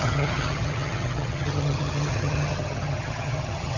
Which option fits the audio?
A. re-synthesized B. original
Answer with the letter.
A